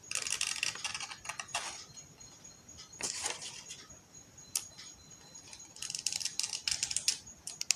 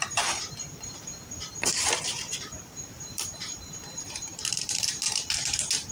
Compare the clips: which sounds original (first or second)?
first